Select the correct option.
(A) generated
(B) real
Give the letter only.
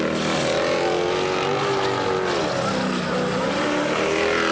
B